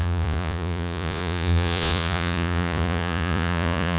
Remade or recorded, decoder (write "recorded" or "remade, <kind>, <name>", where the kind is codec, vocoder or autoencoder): remade, vocoder, Vocos